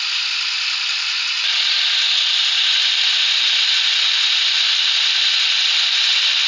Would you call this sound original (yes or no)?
yes